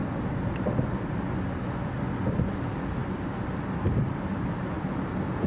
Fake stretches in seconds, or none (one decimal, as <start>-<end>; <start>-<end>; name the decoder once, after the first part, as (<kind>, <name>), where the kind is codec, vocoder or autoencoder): 3.0-4.6 (vocoder, BigVGAN v2)

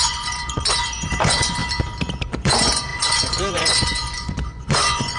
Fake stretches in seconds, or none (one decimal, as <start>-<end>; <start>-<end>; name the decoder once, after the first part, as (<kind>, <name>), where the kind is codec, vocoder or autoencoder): 0.0-1.6 (vocoder, Vocos); 2.3-5.2

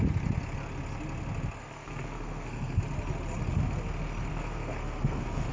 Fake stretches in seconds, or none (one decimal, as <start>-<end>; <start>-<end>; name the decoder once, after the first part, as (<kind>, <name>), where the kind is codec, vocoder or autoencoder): 1.6-2.8 (codec, SNAC); 4.3-5.5

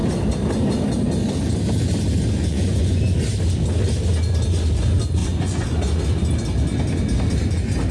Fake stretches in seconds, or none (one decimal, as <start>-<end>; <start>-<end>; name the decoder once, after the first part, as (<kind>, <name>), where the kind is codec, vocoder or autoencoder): 2.4-3.0 (vocoder, Vocos); 5.2-6.0

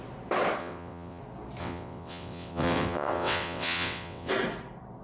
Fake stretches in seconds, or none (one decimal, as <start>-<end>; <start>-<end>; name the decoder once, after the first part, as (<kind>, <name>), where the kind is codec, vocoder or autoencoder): 0.6-1.2 (vocoder, WaveNeXt); 1.6-4.3

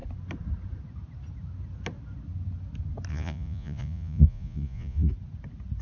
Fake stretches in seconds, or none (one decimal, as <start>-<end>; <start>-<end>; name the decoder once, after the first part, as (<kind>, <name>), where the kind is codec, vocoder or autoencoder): 3.1-5.1 (vocoder, Vocos)

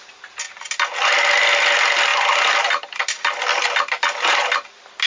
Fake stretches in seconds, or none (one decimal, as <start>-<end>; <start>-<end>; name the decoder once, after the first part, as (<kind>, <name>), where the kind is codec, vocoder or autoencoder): none

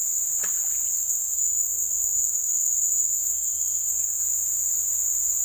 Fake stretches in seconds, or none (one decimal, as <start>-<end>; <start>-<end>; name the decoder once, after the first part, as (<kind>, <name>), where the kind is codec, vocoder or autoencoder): 1.0-4.2 (codec, SNAC)